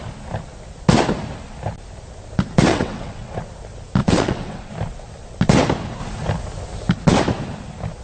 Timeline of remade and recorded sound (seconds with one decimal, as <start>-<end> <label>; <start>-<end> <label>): 0.0-2.7 recorded; 2.7-3.4 remade; 3.4-4.0 recorded; 4.0-4.7 remade; 4.7-8.0 recorded